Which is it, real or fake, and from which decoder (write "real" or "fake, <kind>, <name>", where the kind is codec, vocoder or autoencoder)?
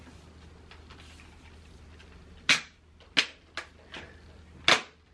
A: real